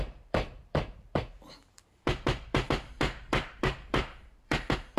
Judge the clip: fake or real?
fake